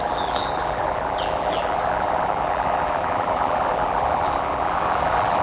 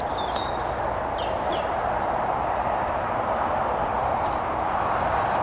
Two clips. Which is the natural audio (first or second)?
second